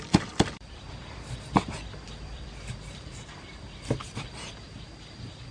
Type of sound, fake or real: fake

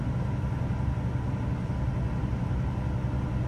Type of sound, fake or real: real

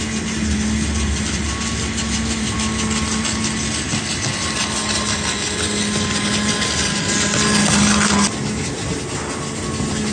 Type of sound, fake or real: real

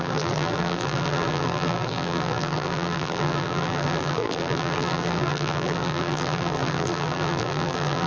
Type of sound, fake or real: fake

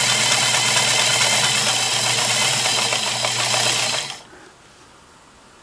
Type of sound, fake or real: real